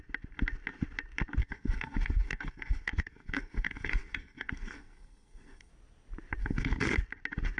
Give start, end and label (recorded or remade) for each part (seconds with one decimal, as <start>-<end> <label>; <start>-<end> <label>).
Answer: 0.0-1.4 recorded; 1.4-5.7 remade; 5.7-6.4 recorded; 6.4-7.0 remade; 7.0-7.6 recorded